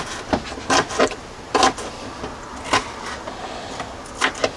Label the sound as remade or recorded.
recorded